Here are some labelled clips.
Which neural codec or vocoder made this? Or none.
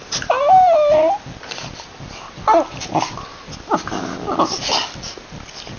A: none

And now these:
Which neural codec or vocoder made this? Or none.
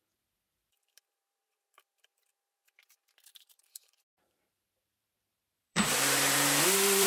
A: vocoder, BigVGAN v2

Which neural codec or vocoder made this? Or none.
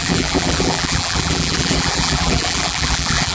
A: vocoder, BigVGAN v2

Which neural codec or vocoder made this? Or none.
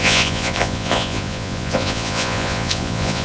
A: vocoder, Vocos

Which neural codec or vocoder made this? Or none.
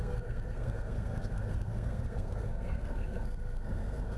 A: codec, SNAC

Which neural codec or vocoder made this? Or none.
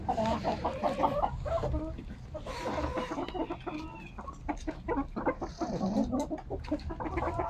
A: none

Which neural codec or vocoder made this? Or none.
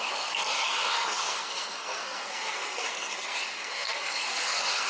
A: codec, SNAC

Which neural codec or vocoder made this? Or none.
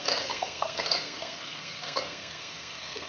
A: codec, SNAC